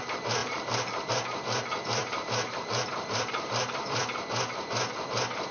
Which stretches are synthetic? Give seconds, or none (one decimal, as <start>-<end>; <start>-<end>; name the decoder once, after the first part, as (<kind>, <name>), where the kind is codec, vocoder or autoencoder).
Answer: 0.4-1.1 (vocoder, BigVGAN v2); 2.0-4.0